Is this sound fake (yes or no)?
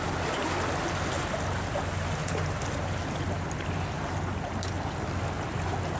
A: no